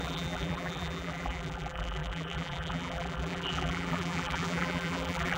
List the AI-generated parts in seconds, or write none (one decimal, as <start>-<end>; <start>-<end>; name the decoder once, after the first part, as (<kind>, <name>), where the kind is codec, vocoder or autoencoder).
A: 0.0-5.4 (vocoder, BigVGAN v2)